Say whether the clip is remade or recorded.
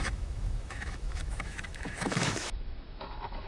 remade